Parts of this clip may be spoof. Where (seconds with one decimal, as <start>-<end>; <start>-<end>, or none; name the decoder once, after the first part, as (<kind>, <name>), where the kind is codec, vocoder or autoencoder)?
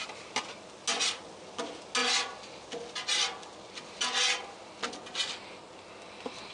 none